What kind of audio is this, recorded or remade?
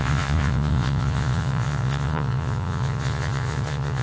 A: remade